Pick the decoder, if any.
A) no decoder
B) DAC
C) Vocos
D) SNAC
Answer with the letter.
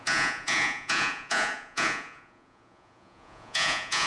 C